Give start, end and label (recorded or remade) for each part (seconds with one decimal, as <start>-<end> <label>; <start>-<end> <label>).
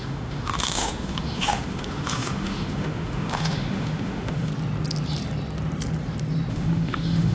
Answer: 0.0-4.5 remade; 4.5-6.5 recorded; 6.5-7.3 remade